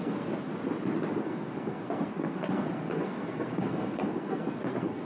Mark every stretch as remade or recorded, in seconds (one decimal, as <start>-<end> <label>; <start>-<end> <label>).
0.0-0.5 remade; 0.5-1.2 recorded; 1.2-5.0 remade